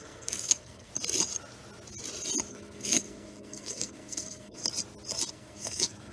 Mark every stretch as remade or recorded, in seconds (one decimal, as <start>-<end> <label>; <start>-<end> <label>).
0.0-0.9 remade; 0.9-2.5 recorded; 2.5-4.6 remade; 4.6-5.3 recorded; 5.3-6.1 remade